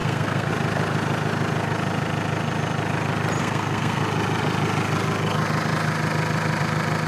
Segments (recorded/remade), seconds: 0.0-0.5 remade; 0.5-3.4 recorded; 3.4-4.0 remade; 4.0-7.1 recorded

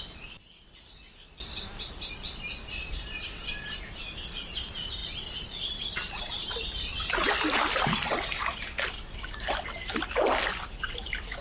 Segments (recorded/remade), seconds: 0.0-11.4 remade